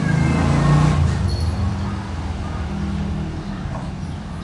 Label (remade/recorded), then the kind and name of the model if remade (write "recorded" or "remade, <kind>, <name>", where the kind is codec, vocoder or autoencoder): recorded